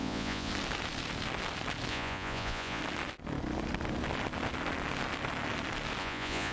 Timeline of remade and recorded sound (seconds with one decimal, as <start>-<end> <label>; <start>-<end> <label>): 0.0-0.5 remade; 0.5-1.9 recorded; 1.9-2.8 remade; 2.8-6.0 recorded; 6.0-6.5 remade